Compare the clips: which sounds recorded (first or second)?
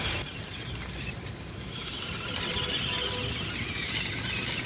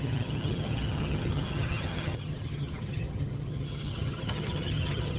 first